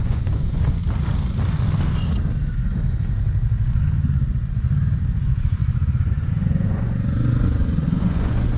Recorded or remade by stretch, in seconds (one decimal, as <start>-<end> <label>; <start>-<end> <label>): 0.0-0.8 remade; 0.8-5.0 recorded; 5.0-8.6 remade